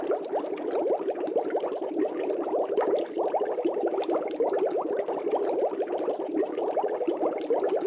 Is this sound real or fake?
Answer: real